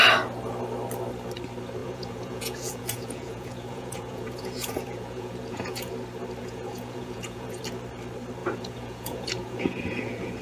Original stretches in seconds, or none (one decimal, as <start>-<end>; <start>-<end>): 0.0-1.8; 5.9-6.4; 7.6-8.4